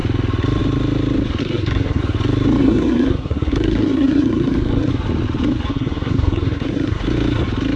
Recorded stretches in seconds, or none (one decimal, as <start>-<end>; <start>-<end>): 0.0-1.4; 2.0-2.6; 4.9-5.7; 7.0-7.8